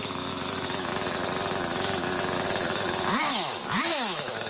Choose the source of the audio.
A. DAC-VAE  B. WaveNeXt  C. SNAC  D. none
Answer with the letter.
A